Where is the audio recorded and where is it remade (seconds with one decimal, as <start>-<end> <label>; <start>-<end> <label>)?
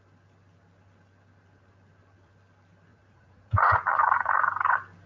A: 0.0-2.9 recorded; 2.9-4.3 remade; 4.3-5.1 recorded